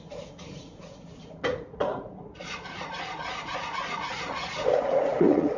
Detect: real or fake fake